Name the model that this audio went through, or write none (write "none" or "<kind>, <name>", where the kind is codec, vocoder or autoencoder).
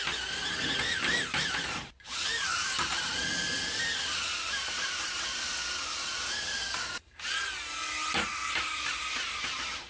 none